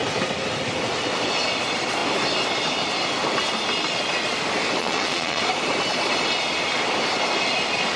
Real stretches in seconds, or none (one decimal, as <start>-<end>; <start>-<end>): 0.0-4.8; 5.4-8.0